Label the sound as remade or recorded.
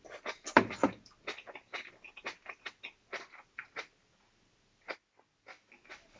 recorded